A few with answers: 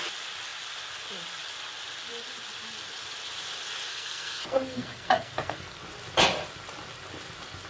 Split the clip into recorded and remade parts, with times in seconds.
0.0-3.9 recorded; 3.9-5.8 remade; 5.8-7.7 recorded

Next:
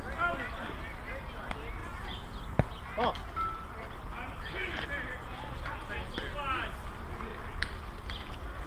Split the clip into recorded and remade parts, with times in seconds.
0.0-8.7 recorded

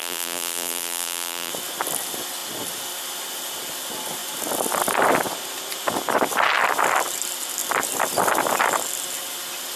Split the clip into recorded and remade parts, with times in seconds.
0.0-1.5 remade; 1.5-9.8 recorded

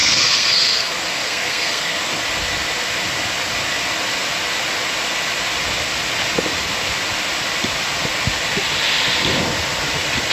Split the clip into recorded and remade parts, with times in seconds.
0.0-2.0 remade; 2.0-10.3 recorded

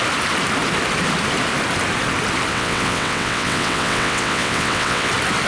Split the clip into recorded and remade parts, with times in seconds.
0.0-2.5 recorded; 2.5-5.1 remade; 5.1-5.5 recorded

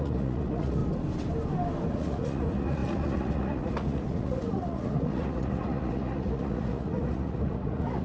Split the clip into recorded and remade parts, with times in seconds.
0.0-0.8 remade; 0.8-1.9 recorded; 1.9-8.0 remade

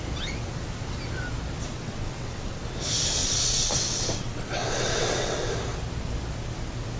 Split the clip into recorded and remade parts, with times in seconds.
0.0-1.7 recorded; 1.7-2.6 remade; 2.6-3.2 recorded; 3.2-5.5 remade; 5.5-7.0 recorded

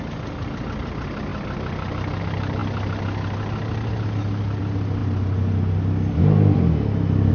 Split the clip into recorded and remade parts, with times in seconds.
0.0-7.3 recorded